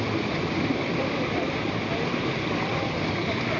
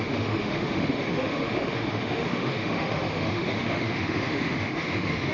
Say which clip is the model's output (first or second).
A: second